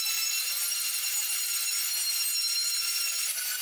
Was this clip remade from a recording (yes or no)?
no